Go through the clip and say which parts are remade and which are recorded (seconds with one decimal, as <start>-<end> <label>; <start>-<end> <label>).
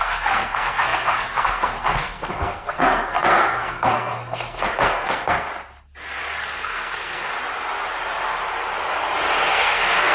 0.0-5.5 remade; 5.5-6.3 recorded; 6.3-7.3 remade; 7.3-9.5 recorded; 9.5-10.1 remade